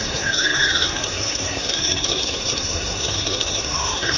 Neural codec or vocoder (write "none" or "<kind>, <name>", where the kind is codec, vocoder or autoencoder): codec, SNAC